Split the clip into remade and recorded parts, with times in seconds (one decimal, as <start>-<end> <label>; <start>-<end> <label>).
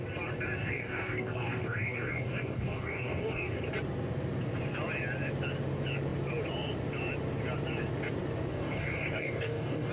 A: 0.0-0.6 recorded; 0.6-3.5 remade; 3.5-8.5 recorded; 8.5-9.9 remade